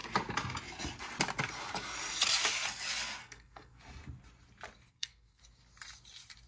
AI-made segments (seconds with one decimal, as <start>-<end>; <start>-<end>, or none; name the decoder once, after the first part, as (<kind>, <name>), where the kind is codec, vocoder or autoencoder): 3.2-3.8 (codec, SNAC); 4.9-5.4